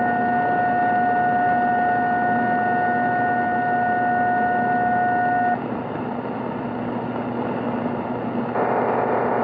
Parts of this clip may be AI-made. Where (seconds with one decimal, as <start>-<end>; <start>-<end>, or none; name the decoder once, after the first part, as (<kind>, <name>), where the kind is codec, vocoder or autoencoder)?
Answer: none